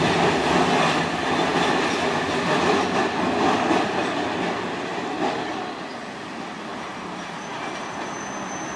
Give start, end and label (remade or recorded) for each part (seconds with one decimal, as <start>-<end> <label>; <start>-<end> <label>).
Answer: 0.0-6.7 recorded; 6.7-7.4 remade; 7.4-8.8 recorded